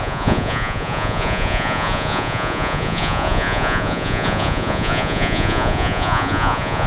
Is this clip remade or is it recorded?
remade